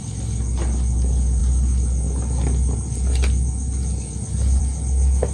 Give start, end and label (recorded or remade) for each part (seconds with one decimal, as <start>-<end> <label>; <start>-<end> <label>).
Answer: 0.0-5.3 recorded